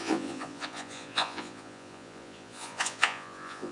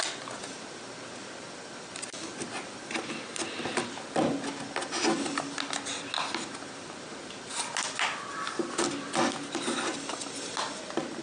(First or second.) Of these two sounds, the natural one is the second